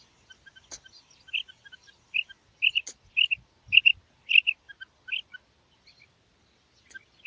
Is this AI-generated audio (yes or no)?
no